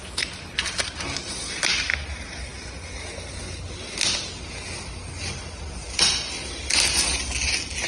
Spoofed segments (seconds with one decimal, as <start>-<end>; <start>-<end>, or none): none